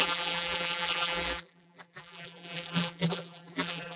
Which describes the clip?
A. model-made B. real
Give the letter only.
A